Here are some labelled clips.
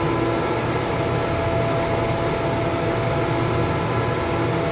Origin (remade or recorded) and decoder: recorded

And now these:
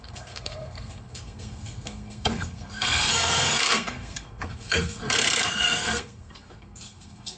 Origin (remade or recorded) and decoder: remade, codec, SNAC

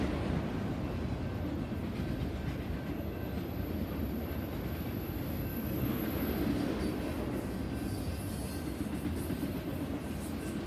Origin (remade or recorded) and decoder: recorded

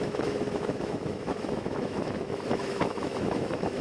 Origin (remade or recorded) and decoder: remade, autoencoder, DAC-VAE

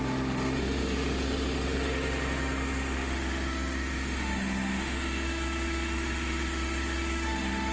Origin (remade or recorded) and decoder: remade, autoencoder, DAC-VAE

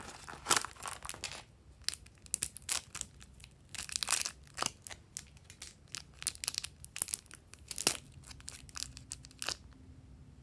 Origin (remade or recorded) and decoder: recorded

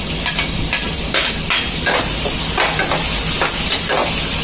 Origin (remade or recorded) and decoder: recorded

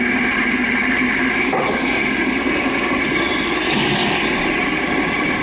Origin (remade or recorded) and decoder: recorded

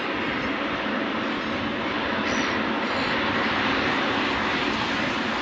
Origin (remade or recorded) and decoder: recorded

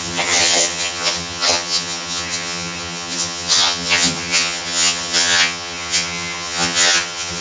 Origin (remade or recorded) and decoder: remade, vocoder, HiFi-GAN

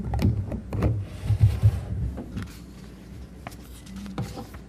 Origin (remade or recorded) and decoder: remade, vocoder, BigVGAN v2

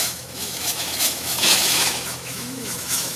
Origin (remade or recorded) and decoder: remade, autoencoder, DAC-VAE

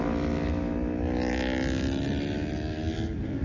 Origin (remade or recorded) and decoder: recorded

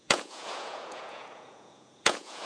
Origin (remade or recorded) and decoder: remade, vocoder, Vocos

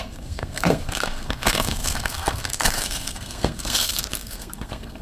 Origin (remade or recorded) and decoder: remade, codec, SNAC